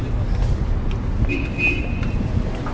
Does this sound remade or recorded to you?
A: recorded